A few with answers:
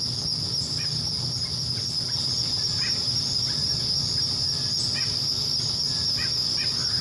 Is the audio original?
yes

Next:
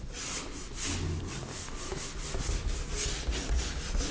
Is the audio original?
yes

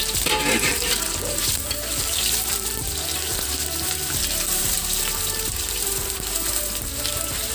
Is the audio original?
no